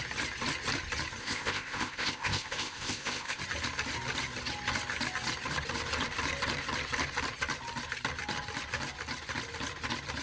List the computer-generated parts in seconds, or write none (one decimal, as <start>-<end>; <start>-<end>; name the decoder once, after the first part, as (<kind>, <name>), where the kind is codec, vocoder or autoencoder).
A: 1.2-3.4 (codec, ZipCodec)